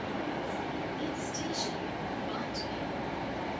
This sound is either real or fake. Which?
fake